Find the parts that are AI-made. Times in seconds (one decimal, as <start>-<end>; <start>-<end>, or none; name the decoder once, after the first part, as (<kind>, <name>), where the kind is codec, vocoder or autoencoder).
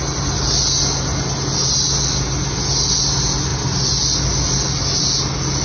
none